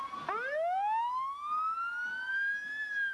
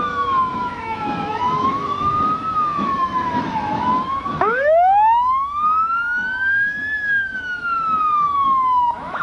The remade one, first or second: second